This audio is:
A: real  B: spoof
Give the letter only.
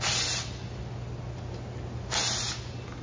A